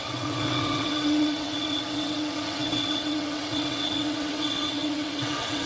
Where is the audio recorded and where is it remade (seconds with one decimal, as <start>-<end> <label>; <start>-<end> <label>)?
0.0-5.7 remade